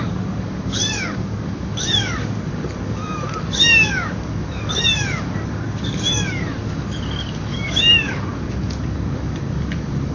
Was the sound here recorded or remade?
remade